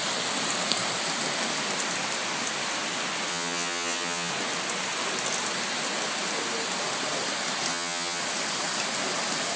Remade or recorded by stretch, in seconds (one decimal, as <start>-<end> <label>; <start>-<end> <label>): 0.0-3.3 recorded; 3.3-4.3 remade; 4.3-7.7 recorded; 7.7-8.2 remade; 8.2-9.6 recorded